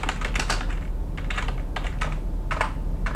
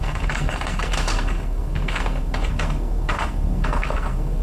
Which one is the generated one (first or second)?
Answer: second